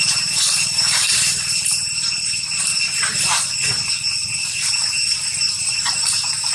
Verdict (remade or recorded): remade